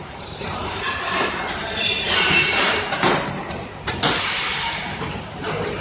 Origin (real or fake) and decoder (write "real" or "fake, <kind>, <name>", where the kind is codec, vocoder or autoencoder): fake, vocoder, BigVGAN v2